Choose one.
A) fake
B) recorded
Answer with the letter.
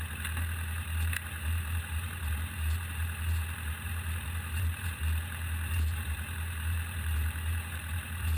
A